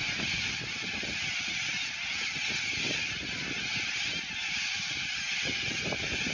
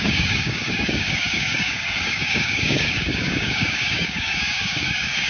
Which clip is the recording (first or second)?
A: first